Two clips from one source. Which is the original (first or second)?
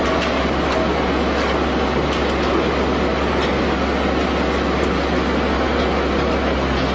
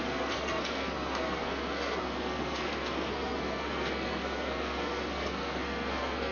first